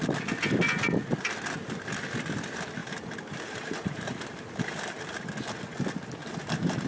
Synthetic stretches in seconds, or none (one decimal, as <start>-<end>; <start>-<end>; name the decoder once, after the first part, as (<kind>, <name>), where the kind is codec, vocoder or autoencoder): 2.8-5.0 (vocoder, BigVGAN v2); 6.2-6.9